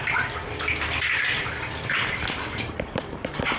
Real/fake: fake